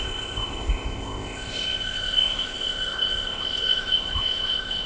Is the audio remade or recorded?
remade